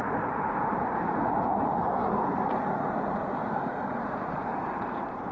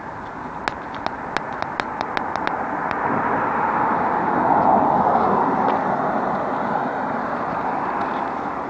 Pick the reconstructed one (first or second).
first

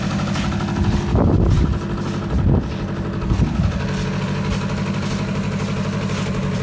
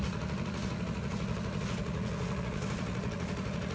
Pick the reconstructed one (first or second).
second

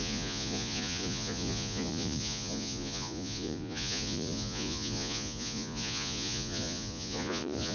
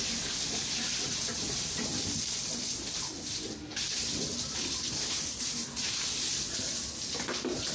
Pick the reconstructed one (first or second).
first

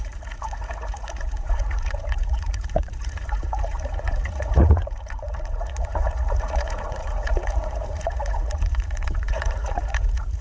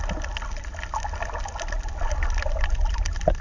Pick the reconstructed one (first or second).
first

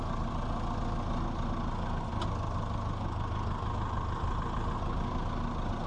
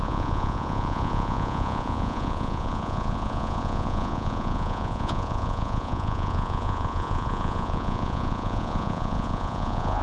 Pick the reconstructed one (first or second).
second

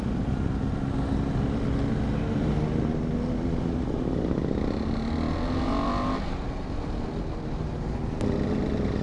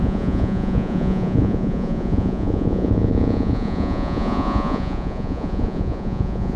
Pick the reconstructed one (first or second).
second